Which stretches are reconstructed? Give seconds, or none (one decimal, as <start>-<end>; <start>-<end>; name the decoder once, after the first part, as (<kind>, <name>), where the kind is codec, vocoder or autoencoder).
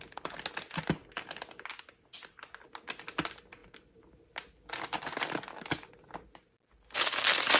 none